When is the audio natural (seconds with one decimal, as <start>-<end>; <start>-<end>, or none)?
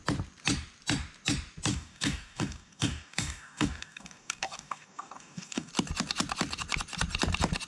0.0-1.7; 5.7-7.7